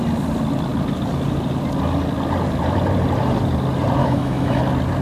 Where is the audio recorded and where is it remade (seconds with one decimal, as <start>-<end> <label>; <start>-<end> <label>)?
0.0-4.0 recorded; 4.0-4.6 remade; 4.6-5.0 recorded